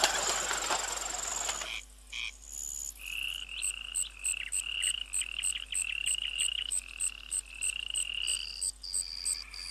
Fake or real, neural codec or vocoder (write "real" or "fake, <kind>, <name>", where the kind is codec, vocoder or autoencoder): real